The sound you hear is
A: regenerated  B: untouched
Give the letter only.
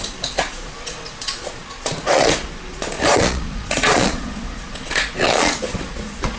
A